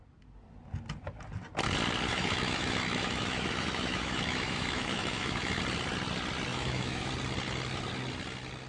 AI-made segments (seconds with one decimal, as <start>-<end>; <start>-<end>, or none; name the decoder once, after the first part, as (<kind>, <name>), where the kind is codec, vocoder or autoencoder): 2.1-5.6 (autoencoder, DAC-VAE); 6.5-7.1